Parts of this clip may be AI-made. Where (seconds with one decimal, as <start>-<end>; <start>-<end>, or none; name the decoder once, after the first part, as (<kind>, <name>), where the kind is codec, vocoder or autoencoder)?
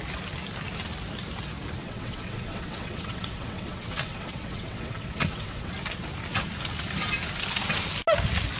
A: 1.8-5.7 (vocoder, WaveNeXt)